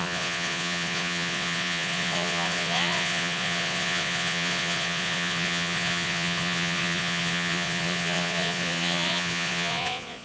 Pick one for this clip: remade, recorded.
remade